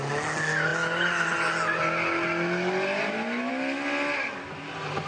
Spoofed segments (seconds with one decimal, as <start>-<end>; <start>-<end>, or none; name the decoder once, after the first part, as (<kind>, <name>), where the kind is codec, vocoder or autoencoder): none